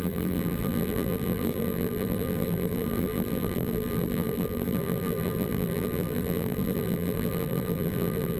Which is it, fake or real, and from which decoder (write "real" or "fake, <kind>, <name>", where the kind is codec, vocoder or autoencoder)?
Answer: fake, vocoder, BigVGAN v2